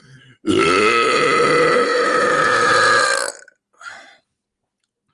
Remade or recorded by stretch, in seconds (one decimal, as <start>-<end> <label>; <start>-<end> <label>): 0.0-1.9 recorded; 1.9-2.7 remade; 2.7-5.1 recorded